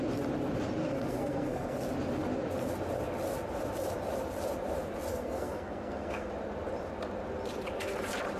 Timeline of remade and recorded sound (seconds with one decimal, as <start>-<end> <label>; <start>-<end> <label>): 0.0-0.8 recorded; 0.8-1.8 remade; 1.8-5.1 recorded; 5.1-6.3 remade; 6.3-8.4 recorded

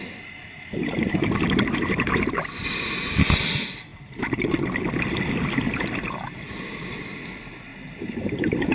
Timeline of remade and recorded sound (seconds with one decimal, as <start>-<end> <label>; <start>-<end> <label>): 0.0-8.7 recorded

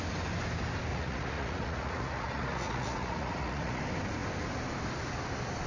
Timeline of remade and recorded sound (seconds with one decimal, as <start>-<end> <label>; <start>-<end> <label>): 0.0-0.9 recorded; 0.9-3.8 remade; 3.8-5.7 recorded

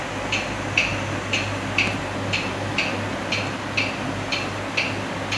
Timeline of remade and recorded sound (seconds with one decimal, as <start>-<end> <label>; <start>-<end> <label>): 0.0-5.4 recorded

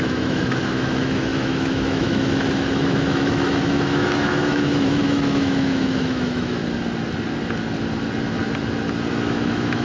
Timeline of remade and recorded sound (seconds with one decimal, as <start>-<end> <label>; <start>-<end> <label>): 0.0-6.6 remade; 6.6-9.1 recorded; 9.1-9.8 remade

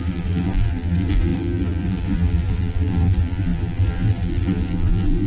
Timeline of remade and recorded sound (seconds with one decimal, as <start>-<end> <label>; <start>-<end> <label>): 0.0-5.3 remade

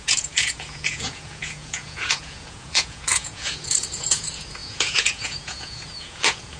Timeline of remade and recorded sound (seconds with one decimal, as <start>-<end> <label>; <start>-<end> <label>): 0.0-6.6 remade